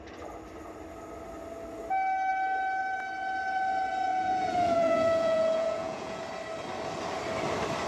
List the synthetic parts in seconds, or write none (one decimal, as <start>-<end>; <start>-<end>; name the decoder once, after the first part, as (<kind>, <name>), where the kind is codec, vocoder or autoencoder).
4.1-6.2 (vocoder, Vocos)